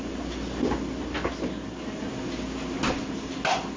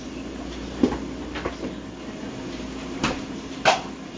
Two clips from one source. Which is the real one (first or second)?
first